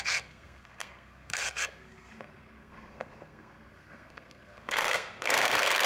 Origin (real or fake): fake